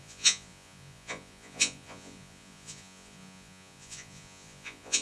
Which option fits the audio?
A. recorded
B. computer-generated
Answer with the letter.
B